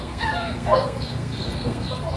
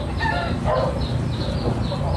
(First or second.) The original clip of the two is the second